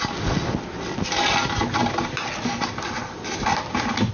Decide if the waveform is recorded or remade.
recorded